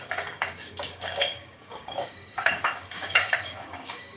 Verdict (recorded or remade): remade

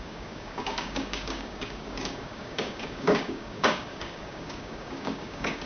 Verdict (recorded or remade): remade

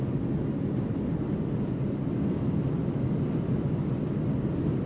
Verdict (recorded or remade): recorded